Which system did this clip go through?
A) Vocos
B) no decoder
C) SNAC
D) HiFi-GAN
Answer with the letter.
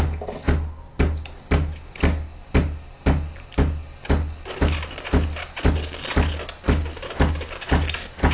B